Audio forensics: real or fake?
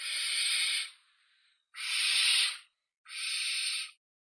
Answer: real